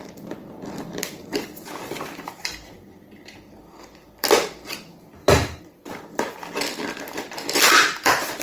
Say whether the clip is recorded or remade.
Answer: remade